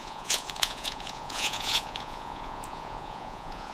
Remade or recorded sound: remade